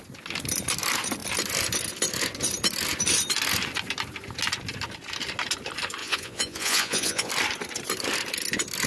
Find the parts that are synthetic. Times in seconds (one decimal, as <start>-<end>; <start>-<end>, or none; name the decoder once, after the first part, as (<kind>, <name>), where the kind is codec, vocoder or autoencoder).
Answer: 6.0-7.3 (vocoder, Vocos)